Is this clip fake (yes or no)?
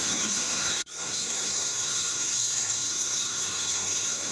yes